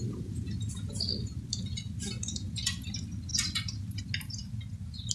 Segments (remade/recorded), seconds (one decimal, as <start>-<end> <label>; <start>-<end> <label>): 0.0-5.1 recorded